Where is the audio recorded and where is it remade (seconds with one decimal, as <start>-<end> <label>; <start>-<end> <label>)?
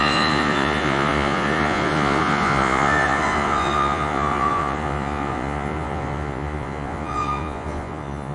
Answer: 0.0-8.3 remade